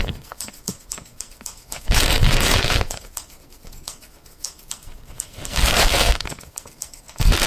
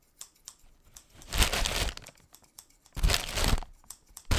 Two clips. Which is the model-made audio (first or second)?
first